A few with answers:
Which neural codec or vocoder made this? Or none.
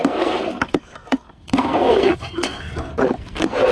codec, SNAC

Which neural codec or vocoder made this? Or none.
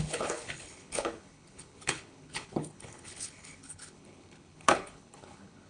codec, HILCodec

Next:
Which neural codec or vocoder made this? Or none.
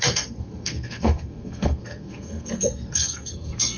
codec, SNAC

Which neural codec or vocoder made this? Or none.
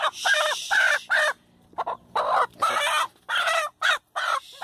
none